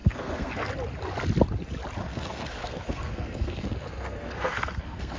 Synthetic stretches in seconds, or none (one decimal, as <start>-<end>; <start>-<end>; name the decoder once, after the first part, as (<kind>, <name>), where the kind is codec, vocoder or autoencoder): 0.0-0.7 (codec, SNAC); 2.0-5.2